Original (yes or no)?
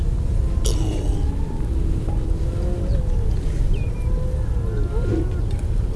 yes